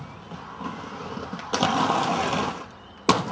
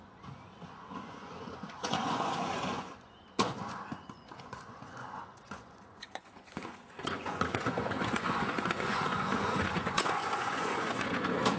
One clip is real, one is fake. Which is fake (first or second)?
second